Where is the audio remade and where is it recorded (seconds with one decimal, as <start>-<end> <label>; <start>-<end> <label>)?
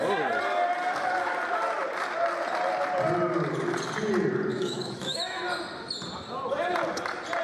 0.0-4.5 recorded; 4.5-5.4 remade; 5.4-7.4 recorded